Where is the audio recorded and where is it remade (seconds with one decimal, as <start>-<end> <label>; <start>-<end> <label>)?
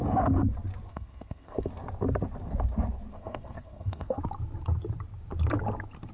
0.0-0.9 recorded; 0.9-1.7 remade; 1.7-3.1 recorded; 3.1-4.2 remade; 4.2-6.1 recorded